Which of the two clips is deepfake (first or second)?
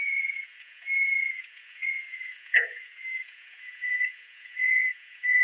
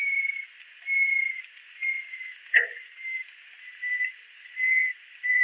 first